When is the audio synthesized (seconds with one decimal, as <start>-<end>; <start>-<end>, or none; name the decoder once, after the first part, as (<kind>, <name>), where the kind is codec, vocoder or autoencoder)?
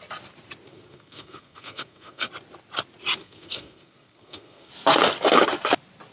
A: 0.7-2.3 (codec, SNAC); 3.2-4.7